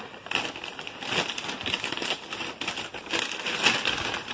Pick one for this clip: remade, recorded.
recorded